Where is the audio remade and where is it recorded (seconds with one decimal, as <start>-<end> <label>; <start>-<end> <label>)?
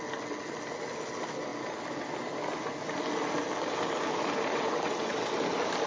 0.0-4.5 recorded; 4.5-5.4 remade; 5.4-5.9 recorded